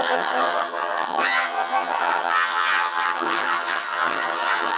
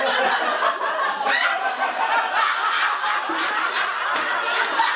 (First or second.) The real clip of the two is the second